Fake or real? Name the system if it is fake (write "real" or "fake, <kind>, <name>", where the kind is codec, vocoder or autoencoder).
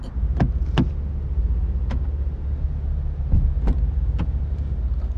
real